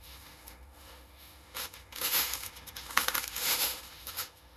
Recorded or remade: remade